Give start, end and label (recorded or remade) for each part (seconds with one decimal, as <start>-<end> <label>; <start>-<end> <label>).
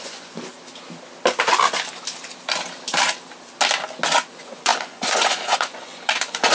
0.0-0.5 remade; 0.5-4.3 recorded; 4.3-6.5 remade